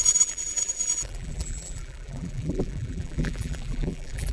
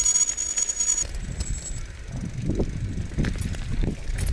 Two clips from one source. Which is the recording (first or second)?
second